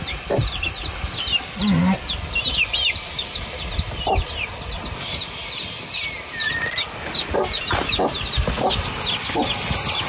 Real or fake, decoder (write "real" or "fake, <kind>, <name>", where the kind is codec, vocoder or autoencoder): real